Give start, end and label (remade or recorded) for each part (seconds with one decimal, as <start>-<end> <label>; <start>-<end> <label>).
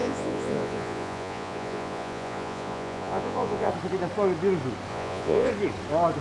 0.0-3.7 remade; 3.7-4.9 recorded; 4.9-5.5 remade; 5.5-6.2 recorded